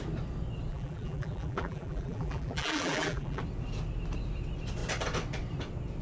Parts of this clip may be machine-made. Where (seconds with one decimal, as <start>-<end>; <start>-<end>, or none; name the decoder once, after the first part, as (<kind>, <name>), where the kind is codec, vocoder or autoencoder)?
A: 0.7-3.4 (vocoder, BigVGAN v2)